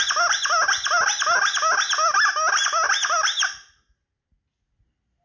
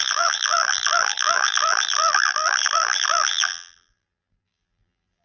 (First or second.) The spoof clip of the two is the second